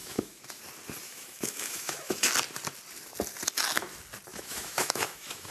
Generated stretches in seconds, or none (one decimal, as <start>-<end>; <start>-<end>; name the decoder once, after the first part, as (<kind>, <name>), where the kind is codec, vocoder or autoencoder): 0.0-0.6 (autoencoder, DAC-VAE); 1.0-2.3; 4.3-5.5